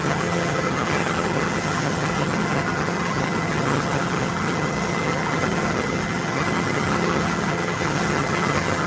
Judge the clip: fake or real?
fake